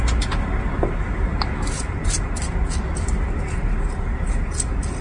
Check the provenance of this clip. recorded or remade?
recorded